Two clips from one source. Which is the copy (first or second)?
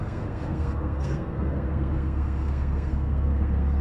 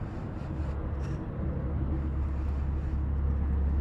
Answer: first